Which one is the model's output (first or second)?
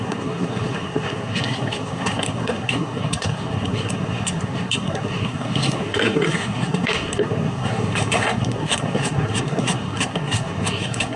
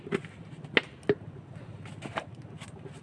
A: first